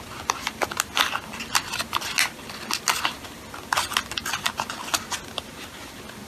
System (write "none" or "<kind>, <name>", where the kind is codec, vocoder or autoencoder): none